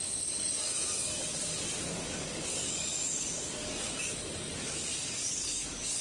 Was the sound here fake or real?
fake